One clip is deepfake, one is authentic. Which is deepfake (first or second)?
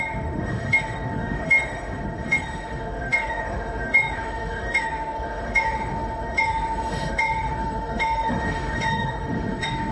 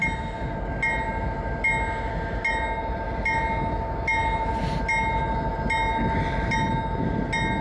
first